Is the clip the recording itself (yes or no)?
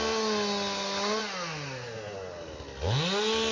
yes